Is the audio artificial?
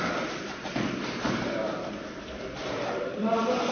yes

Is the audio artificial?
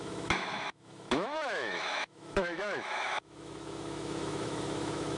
yes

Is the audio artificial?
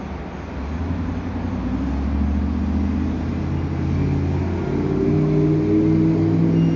no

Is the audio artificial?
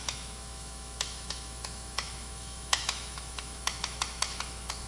yes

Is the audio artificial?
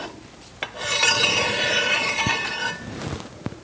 no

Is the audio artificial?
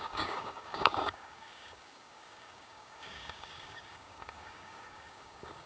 yes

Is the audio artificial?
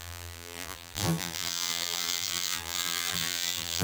yes